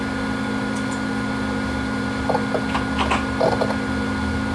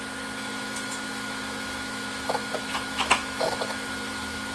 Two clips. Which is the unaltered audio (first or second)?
first